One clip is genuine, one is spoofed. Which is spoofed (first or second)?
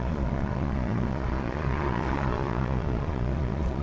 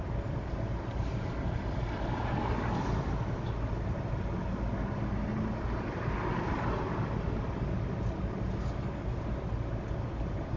first